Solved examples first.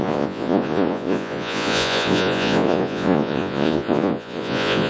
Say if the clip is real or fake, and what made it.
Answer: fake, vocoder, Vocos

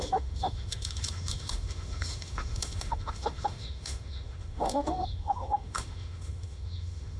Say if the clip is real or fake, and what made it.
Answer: fake, autoencoder, DAC-VAE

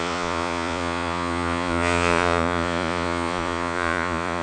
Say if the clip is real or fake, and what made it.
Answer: fake, vocoder, Vocos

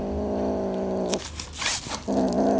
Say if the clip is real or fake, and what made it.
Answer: real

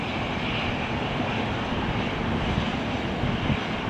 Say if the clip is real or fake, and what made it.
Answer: real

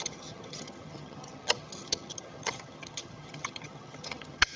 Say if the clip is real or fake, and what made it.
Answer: fake, vocoder, HiFi-GAN